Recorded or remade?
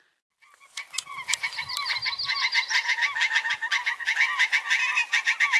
recorded